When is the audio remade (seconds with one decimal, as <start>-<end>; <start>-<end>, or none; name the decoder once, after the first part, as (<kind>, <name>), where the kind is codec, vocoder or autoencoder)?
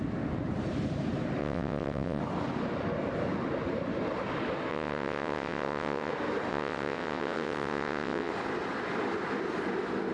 1.4-2.2 (vocoder, WaveNeXt); 4.7-6.1; 6.5-8.3